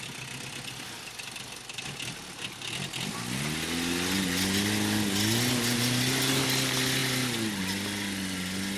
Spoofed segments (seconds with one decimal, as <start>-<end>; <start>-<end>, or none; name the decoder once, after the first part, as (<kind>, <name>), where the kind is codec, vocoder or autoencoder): none